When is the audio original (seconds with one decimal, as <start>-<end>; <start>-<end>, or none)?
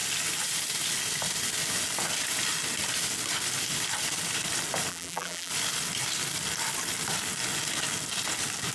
0.0-4.9; 5.5-8.7